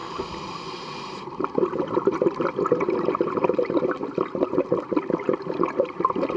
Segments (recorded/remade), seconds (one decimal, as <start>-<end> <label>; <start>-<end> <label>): 0.0-6.4 recorded